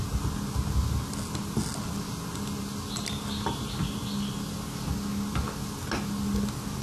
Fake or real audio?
real